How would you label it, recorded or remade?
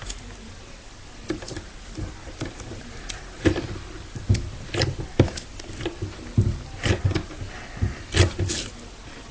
recorded